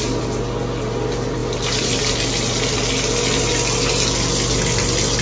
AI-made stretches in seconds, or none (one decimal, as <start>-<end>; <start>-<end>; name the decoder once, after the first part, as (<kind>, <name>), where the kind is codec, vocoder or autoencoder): 1.4-2.0 (vocoder, BigVGAN v2)